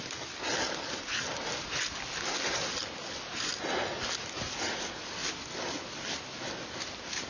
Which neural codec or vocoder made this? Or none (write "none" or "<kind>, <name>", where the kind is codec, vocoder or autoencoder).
none